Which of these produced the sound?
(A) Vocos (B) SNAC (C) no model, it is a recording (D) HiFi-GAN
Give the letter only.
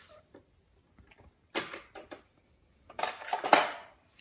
C